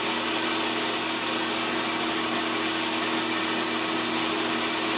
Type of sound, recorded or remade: recorded